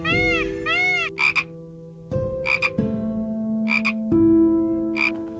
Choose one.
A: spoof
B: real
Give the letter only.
B